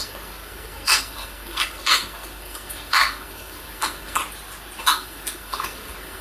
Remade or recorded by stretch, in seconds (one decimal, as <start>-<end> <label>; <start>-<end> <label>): 0.0-4.2 remade; 4.2-4.8 recorded; 4.8-6.2 remade